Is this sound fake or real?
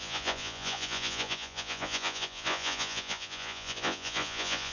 fake